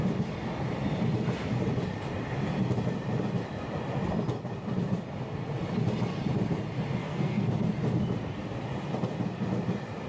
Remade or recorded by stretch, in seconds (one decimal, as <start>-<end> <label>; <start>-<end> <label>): 0.0-7.0 recorded; 7.0-7.5 remade; 7.5-10.1 recorded